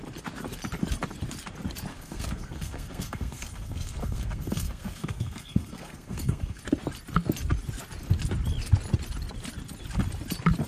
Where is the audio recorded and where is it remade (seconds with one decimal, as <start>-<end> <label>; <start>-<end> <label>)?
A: 0.0-1.9 recorded; 1.9-6.6 remade; 6.6-10.7 recorded